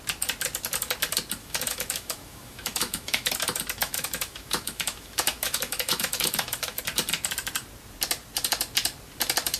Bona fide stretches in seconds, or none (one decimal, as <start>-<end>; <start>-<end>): 0.0-1.4; 3.3-3.8; 6.8-9.6